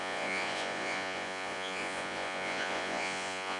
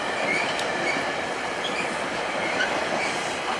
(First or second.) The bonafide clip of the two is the second